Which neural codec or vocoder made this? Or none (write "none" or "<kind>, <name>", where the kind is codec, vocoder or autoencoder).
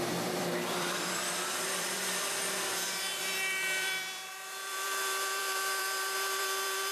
vocoder, BigVGAN v2